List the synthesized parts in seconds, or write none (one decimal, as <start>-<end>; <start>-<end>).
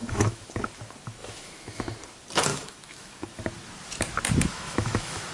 0.0-0.5; 1.2-1.8; 2.5-3.4; 4.5-5.3